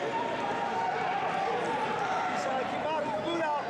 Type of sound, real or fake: real